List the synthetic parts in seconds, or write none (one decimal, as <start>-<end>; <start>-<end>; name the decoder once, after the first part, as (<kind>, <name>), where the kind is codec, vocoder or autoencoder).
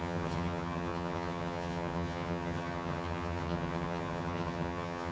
0.0-5.1 (vocoder, HiFi-GAN)